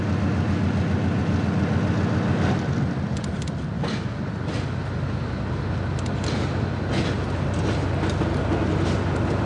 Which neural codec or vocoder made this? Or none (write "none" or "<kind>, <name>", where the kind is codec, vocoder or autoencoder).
none